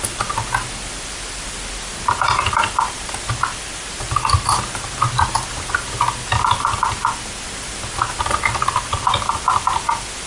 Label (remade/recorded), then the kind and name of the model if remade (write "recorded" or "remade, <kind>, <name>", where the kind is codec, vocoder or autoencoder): recorded